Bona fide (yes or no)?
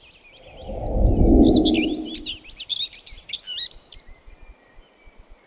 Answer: no